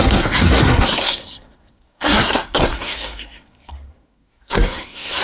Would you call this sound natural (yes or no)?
no